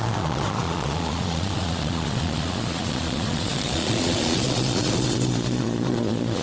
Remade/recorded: remade